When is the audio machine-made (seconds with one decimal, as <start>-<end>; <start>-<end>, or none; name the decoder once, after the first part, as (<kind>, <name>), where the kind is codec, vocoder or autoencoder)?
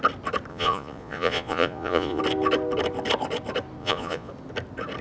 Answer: 0.5-2.2 (vocoder, Vocos); 3.8-4.3